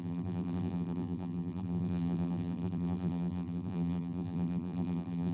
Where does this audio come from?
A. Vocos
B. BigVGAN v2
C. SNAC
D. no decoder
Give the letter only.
B